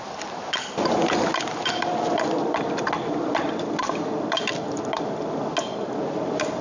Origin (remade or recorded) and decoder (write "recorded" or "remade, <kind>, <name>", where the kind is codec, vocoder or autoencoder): recorded